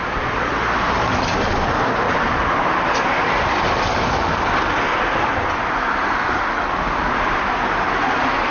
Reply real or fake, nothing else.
real